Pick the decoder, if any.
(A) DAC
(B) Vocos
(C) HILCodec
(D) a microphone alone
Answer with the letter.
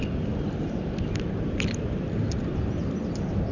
D